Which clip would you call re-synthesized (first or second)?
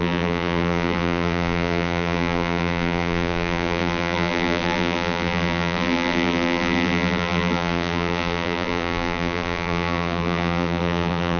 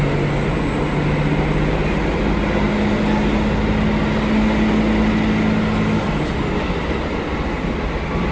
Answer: first